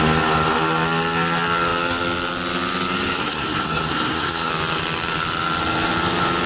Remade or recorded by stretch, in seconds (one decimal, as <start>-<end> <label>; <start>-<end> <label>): 0.0-3.2 recorded; 3.2-4.5 remade; 4.5-6.5 recorded